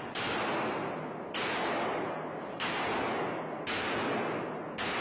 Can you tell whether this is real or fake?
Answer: real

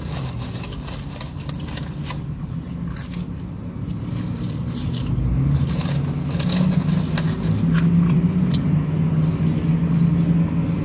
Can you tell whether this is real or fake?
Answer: real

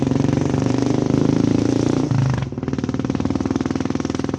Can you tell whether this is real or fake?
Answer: fake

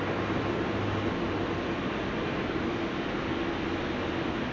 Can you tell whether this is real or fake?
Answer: real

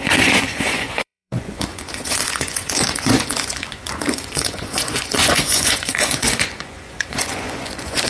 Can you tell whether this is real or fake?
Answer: fake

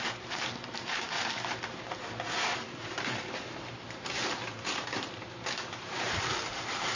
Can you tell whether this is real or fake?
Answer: fake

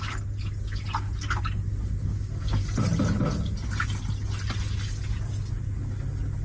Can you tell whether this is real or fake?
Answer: real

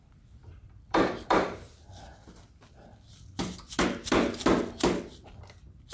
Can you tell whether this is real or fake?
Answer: fake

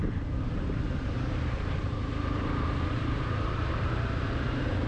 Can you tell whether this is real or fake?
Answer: fake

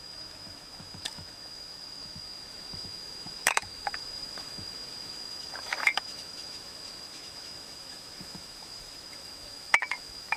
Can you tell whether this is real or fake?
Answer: fake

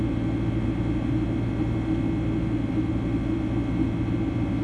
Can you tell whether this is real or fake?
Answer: real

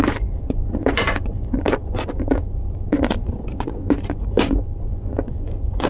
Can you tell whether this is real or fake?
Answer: fake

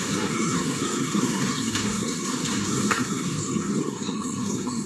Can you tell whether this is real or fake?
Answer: fake